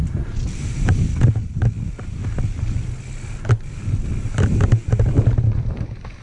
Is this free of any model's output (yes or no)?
yes